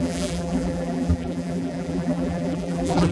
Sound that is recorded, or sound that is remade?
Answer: remade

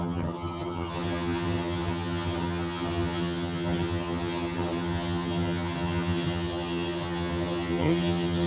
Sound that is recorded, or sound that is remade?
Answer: remade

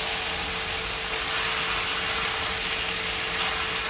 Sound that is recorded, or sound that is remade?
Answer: recorded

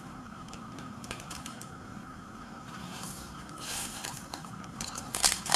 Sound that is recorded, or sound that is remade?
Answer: remade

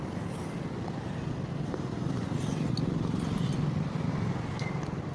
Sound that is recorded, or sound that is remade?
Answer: recorded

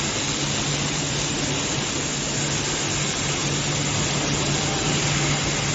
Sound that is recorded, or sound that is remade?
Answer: recorded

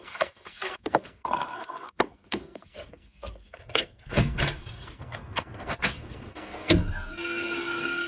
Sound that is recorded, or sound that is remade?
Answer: remade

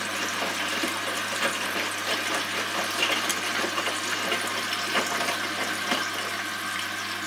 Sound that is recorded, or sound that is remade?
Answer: recorded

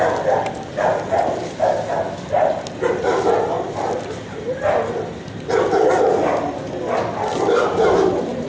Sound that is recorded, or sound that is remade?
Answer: recorded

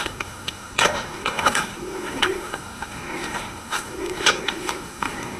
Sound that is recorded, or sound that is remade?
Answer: remade